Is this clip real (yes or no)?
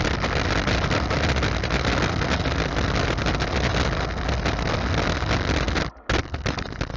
yes